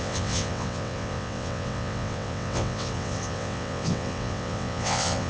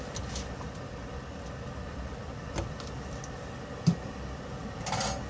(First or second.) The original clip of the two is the second